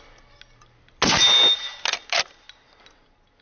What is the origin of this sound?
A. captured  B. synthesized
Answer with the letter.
A